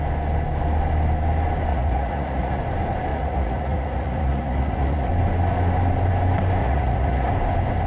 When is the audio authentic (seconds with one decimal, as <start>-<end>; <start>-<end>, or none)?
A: 0.0-1.7; 2.6-3.1; 5.1-6.6; 7.3-7.9

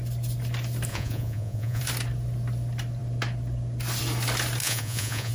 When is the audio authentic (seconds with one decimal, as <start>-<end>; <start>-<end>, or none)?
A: 0.0-0.9; 1.8-4.6